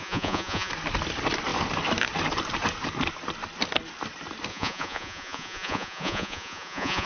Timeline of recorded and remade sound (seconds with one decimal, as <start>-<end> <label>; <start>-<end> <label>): 0.0-0.7 remade; 0.7-4.5 recorded; 4.5-7.1 remade